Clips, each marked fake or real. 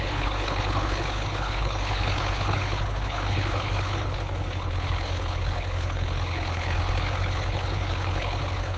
fake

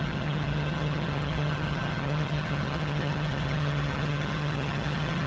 fake